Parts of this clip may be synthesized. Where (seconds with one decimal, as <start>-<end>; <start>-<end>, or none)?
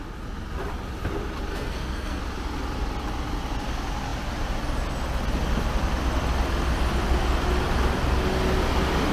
1.5-2.2